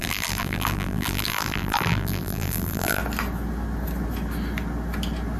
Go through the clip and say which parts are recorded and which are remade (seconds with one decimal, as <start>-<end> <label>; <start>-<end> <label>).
0.0-3.0 remade; 3.0-5.4 recorded